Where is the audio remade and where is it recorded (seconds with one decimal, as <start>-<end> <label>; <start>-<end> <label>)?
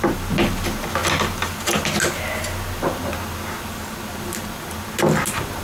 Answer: 0.0-5.6 recorded